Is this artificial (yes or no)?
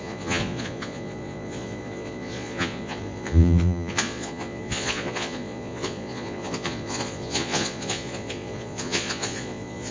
yes